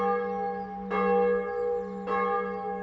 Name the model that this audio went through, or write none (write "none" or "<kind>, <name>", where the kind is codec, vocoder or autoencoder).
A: none